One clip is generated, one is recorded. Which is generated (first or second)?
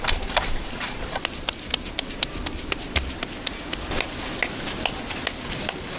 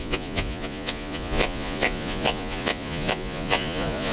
second